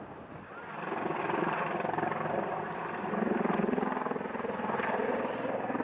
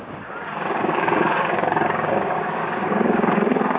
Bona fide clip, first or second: first